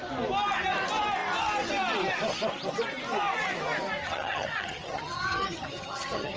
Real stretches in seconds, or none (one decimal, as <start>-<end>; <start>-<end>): 0.0-4.0